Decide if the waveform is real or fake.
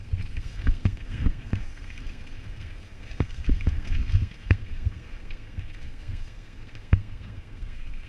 fake